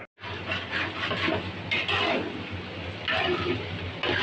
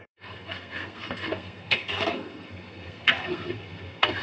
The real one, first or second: first